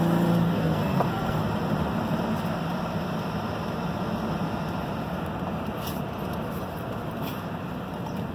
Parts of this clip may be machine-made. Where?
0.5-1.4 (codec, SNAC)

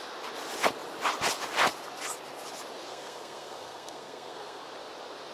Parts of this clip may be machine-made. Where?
2.9-4.6 (codec, SNAC)

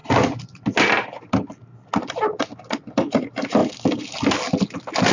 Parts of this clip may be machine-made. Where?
none

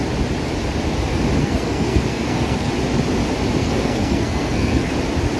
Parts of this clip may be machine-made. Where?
1.4-2.7 (codec, SNAC); 3.6-4.9

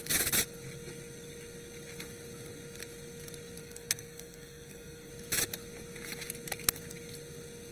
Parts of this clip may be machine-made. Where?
3.6-5.1 (codec, SNAC)

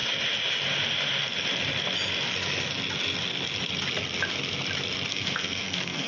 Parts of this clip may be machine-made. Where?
5.1-6.1 (codec, SNAC)

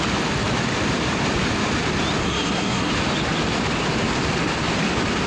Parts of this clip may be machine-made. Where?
2.2-2.9 (codec, SNAC)